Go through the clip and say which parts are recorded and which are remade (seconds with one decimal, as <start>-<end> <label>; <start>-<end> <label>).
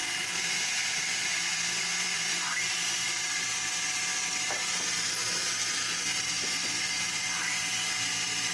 0.0-4.1 remade; 4.1-6.1 recorded; 6.1-7.4 remade; 7.4-8.5 recorded